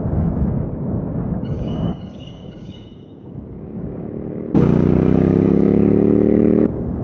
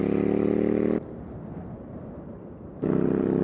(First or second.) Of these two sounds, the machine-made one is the first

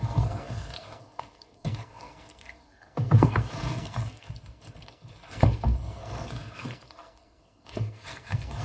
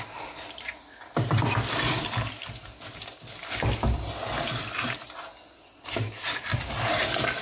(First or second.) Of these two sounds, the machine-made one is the first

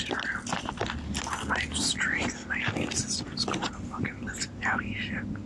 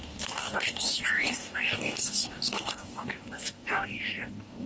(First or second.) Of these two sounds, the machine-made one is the second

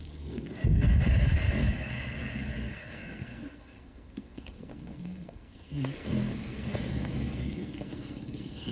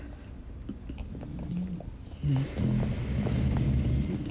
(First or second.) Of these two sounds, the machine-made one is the first